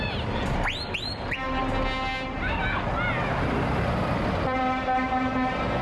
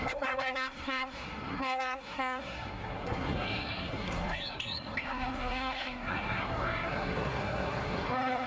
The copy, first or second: second